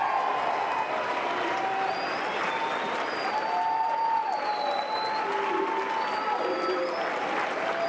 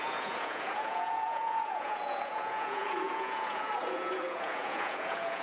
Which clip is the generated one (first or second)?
second